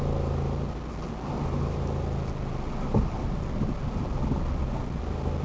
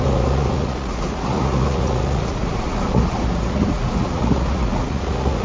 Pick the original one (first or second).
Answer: first